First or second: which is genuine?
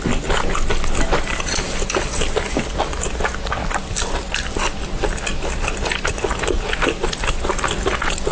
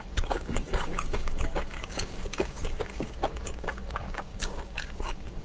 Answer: first